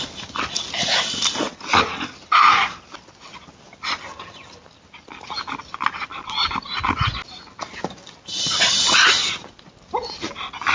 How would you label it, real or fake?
real